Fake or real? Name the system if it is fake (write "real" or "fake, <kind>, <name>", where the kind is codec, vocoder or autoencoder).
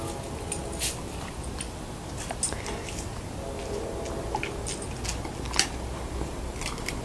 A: real